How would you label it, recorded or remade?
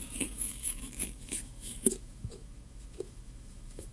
remade